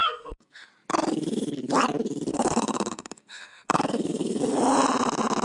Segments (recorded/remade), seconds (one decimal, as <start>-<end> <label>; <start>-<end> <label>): 0.0-0.7 remade; 0.7-2.3 recorded; 2.3-4.4 remade; 4.4-5.4 recorded